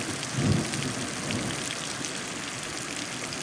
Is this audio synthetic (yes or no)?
no